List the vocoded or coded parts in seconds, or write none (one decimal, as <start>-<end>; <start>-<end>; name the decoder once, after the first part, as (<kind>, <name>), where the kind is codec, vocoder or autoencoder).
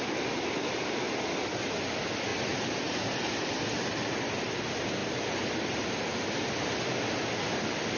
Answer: 5.0-6.2 (vocoder, BigVGAN v2)